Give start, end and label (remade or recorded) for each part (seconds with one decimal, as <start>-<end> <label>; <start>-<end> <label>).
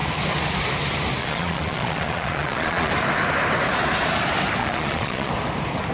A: 0.0-1.2 recorded; 1.2-2.9 remade; 2.9-4.6 recorded; 4.6-5.3 remade; 5.3-5.9 recorded